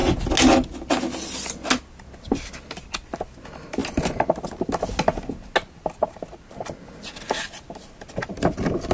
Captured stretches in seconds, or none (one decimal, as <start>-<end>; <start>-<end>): 0.0-8.9